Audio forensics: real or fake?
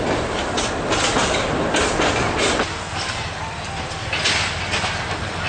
real